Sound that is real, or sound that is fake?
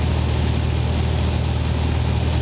real